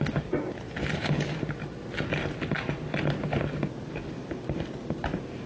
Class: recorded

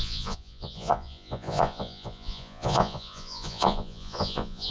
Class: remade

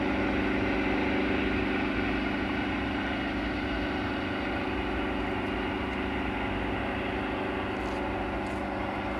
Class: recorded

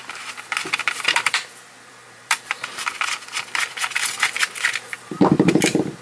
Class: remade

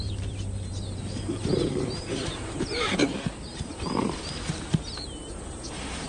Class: remade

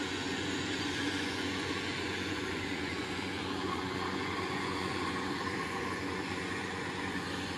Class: remade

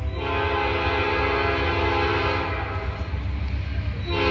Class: recorded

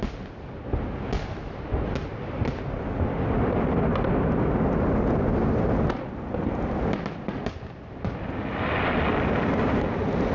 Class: recorded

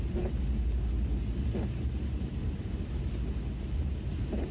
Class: recorded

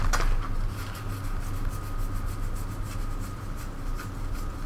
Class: recorded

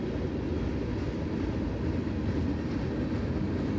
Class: recorded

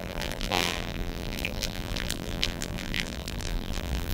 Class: remade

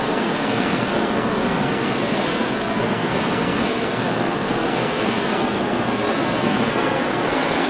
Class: remade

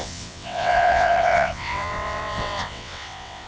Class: remade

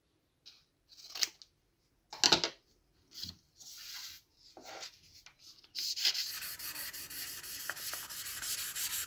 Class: recorded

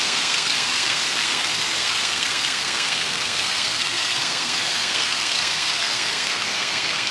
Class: remade